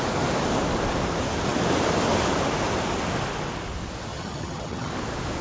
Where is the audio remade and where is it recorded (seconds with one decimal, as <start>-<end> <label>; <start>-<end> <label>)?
0.0-4.1 recorded; 4.1-4.9 remade; 4.9-5.4 recorded